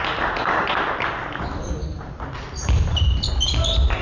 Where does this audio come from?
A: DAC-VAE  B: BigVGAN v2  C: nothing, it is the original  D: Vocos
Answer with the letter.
C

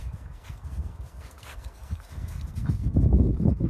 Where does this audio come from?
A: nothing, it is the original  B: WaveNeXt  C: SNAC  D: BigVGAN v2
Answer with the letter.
C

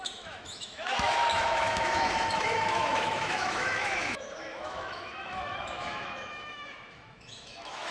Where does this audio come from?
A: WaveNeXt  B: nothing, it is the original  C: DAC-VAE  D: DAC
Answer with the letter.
C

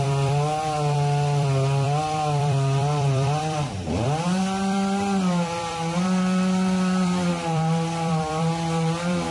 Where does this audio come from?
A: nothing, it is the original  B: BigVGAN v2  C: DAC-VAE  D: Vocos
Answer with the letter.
B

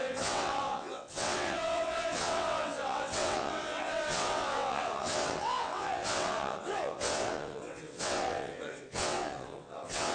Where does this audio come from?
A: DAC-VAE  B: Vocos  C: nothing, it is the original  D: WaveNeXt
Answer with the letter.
D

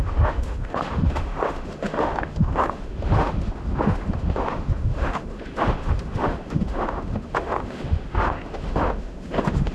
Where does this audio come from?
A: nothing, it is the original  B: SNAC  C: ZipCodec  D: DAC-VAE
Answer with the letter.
D